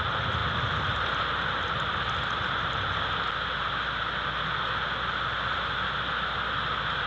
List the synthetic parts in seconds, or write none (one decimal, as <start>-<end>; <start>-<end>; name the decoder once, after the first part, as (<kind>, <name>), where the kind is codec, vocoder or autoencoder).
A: none